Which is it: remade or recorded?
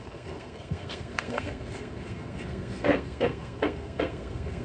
remade